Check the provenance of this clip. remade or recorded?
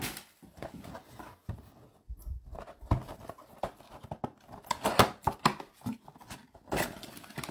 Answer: recorded